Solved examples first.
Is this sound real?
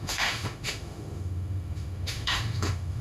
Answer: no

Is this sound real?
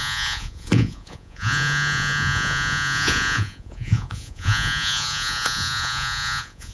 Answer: no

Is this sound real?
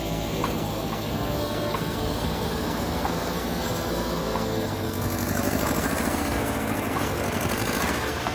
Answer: no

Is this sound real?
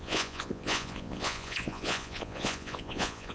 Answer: no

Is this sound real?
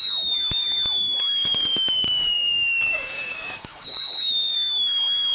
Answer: no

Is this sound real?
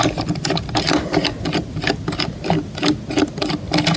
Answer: yes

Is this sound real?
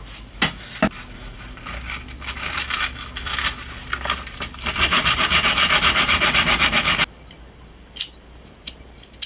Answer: yes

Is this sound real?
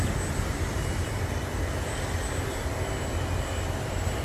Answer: yes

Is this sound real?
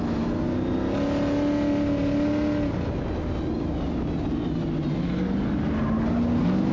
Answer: yes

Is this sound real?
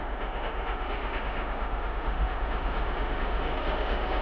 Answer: no